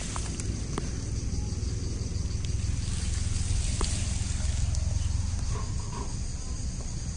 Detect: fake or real real